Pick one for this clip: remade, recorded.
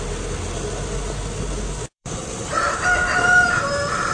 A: remade